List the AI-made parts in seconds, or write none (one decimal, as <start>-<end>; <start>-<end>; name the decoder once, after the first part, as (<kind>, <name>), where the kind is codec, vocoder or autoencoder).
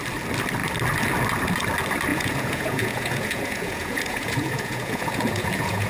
2.1-5.9 (vocoder, Vocos)